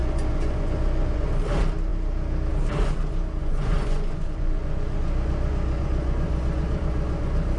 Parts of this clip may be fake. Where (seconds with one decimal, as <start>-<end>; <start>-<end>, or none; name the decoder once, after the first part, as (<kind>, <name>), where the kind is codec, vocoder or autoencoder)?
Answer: 0.0-1.3 (vocoder, Vocos); 3.4-7.6